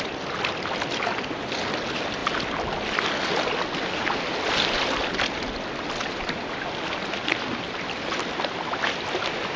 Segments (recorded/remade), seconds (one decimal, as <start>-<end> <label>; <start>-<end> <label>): 0.0-9.6 recorded